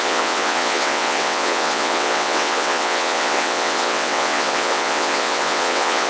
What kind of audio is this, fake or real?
fake